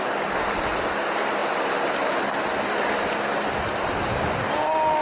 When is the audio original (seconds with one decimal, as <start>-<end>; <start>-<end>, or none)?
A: 0.0-5.0